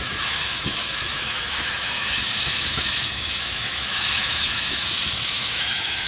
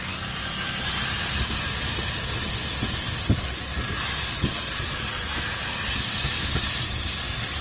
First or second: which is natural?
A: second